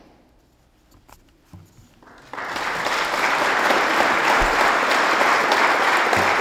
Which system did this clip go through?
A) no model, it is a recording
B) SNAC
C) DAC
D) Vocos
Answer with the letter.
A